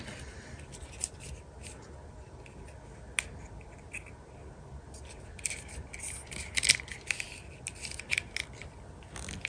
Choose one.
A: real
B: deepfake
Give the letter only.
A